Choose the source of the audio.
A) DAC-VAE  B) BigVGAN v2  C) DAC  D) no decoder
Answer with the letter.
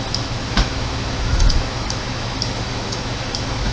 A